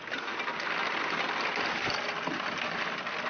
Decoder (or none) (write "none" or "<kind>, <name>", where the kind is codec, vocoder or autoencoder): none